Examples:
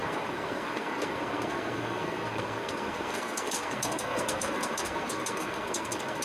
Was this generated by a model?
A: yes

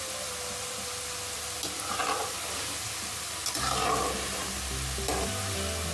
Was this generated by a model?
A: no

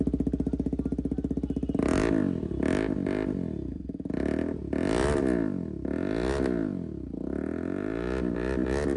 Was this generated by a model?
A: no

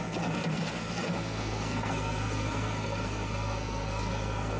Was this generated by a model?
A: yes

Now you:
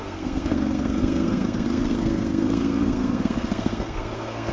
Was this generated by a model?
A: yes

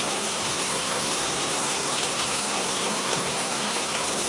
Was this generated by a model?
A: yes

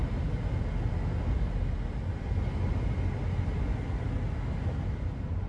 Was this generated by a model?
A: no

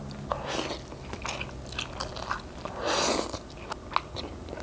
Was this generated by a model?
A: no